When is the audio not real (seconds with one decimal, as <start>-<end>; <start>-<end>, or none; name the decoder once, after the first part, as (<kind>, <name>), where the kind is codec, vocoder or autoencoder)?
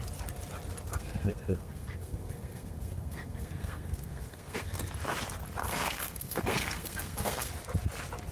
0.9-4.8 (codec, SNAC); 5.6-7.5